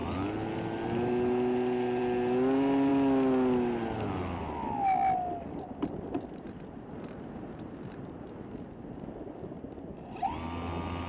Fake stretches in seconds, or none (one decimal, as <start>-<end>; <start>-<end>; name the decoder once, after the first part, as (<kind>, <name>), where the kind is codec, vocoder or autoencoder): none

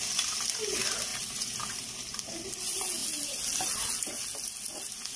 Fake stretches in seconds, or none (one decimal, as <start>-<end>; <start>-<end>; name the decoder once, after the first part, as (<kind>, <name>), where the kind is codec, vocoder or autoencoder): none

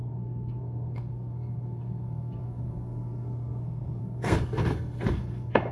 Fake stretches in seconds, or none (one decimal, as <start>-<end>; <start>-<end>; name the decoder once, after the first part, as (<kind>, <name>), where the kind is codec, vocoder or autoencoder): 0.0-5.7 (codec, SNAC)

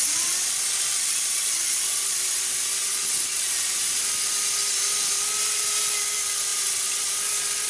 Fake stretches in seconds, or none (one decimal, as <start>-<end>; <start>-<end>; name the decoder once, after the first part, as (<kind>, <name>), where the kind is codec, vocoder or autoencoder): 2.8-3.5 (vocoder, WaveNeXt); 6.5-7.0

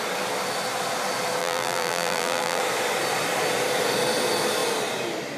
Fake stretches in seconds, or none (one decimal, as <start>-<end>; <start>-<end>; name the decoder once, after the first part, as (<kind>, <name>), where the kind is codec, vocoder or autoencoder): 1.4-2.6 (vocoder, BigVGAN v2)

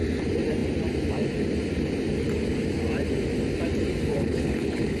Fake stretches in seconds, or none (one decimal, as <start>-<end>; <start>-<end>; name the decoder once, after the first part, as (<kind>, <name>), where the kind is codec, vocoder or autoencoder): 4.1-5.0 (codec, HILCodec)